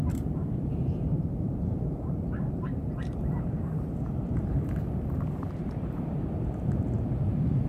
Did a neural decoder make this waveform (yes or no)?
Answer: yes